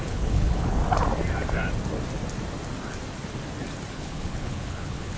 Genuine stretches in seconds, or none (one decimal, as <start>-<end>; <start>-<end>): 0.8-3.9